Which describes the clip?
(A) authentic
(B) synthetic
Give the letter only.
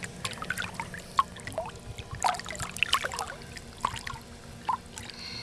A